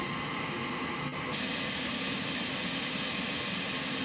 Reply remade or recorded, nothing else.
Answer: recorded